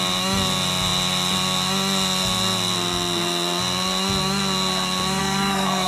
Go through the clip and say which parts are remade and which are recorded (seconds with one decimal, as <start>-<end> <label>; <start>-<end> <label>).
0.0-5.2 recorded; 5.2-5.9 remade